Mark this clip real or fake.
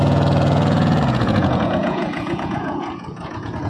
fake